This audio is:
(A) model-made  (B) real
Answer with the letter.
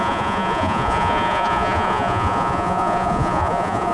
A